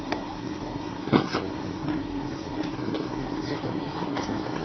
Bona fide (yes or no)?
no